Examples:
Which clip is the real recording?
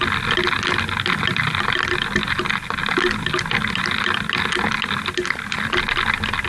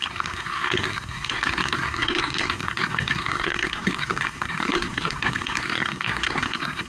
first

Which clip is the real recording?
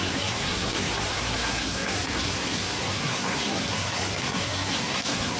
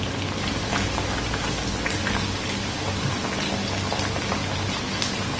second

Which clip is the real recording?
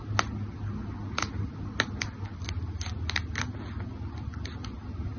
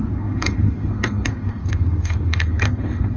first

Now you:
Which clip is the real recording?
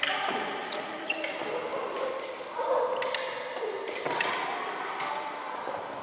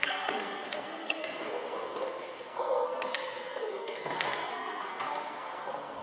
first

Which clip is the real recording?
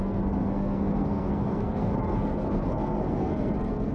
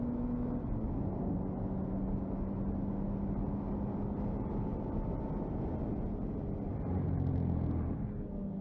second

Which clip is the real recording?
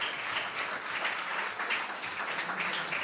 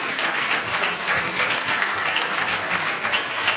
first